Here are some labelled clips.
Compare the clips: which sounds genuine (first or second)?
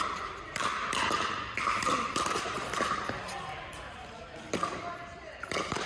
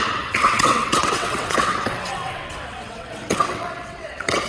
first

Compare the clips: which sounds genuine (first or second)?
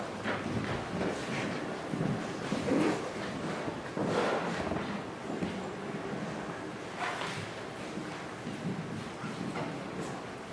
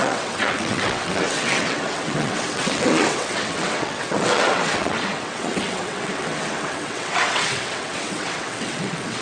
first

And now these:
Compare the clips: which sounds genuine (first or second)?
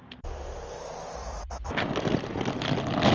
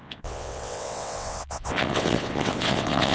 first